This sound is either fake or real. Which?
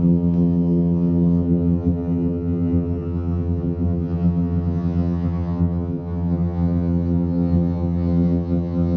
fake